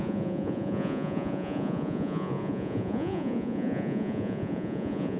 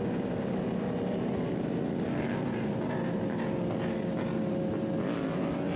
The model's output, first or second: first